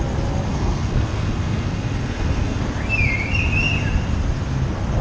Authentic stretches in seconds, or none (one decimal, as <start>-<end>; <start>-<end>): 0.0-0.5; 2.6-5.0